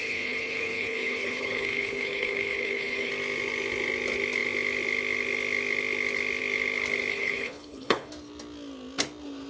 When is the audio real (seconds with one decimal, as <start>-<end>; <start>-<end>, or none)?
3.1-7.1; 8.1-9.5